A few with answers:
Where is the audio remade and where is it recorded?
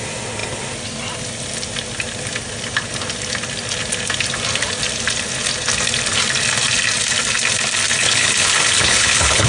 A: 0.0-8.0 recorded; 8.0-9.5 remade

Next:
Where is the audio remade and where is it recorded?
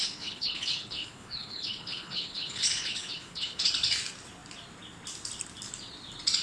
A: 0.0-3.7 remade; 3.7-6.4 recorded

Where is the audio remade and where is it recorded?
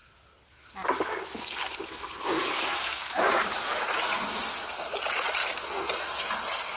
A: 0.0-6.8 recorded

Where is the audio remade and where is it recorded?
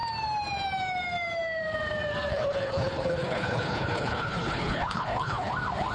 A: 0.0-2.3 recorded; 2.3-5.5 remade; 5.5-5.9 recorded